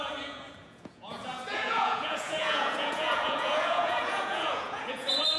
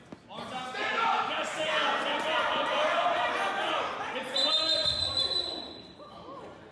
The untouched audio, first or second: second